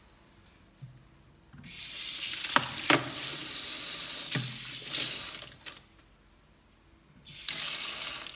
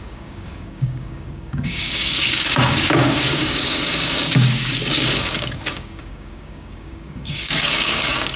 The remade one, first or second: second